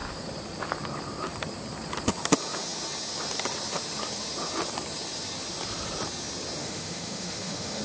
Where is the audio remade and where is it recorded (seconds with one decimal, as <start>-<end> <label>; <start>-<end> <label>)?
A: 0.0-6.6 recorded; 6.6-7.8 remade